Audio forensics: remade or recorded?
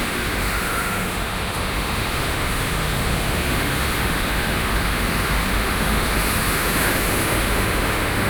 remade